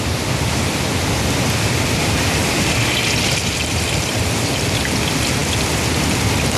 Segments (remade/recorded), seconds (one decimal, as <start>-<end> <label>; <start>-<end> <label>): 0.0-2.4 recorded; 2.4-4.8 remade; 4.8-6.6 recorded